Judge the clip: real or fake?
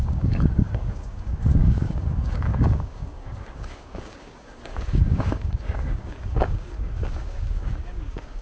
fake